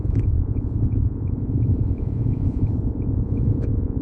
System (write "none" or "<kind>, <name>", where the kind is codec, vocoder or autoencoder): vocoder, Vocos